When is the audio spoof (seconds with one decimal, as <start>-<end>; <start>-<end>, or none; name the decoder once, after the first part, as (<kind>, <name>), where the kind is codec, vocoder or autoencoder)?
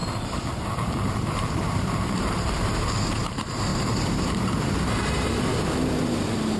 0.0-5.5 (vocoder, BigVGAN v2)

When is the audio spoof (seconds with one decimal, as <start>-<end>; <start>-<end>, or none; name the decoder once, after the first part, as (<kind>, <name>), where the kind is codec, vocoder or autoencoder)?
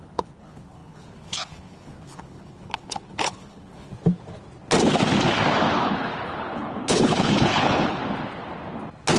0.0-3.9 (codec, HILCodec); 5.7-8.0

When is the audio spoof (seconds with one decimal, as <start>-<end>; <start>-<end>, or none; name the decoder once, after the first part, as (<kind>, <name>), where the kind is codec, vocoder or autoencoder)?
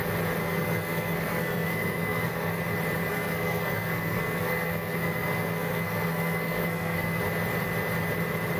0.4-2.6 (codec, SNAC); 3.1-7.2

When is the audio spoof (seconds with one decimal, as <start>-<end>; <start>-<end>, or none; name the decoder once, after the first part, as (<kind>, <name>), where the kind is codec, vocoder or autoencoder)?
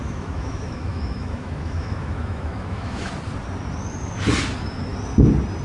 0.0-3.1 (autoencoder, DAC-VAE)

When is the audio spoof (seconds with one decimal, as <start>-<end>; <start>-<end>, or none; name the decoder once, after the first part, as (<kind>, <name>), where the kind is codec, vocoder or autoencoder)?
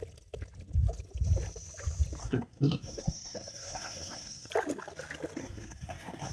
2.2-4.5 (codec, SNAC); 5.4-6.3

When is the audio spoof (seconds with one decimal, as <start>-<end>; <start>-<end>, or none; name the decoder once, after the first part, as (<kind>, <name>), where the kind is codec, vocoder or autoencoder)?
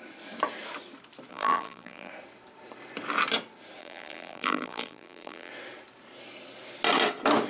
1.3-2.1 (vocoder, BigVGAN v2); 3.8-5.5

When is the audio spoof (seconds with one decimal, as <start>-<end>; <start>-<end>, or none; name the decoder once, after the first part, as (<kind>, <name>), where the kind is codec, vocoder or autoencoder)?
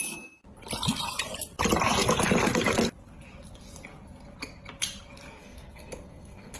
5.4-6.6 (codec, SNAC)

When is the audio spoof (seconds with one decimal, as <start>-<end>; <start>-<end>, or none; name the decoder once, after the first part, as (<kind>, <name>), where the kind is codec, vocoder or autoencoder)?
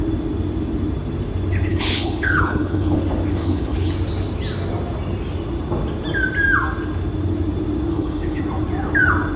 1.7-3.0 (codec, HILCodec); 3.4-3.9; 7.9-8.4